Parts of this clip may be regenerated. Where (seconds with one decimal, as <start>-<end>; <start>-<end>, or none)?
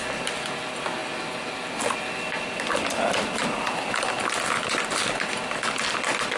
none